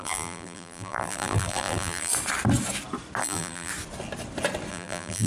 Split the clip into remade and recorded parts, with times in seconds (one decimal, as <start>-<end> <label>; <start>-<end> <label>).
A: 0.0-2.1 remade; 2.1-3.2 recorded; 3.2-3.7 remade; 3.7-4.7 recorded; 4.7-5.3 remade